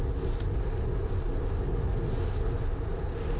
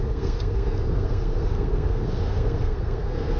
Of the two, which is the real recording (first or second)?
first